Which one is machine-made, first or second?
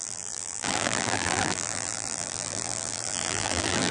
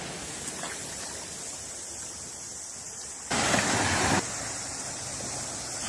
first